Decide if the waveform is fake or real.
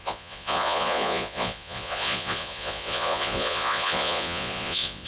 fake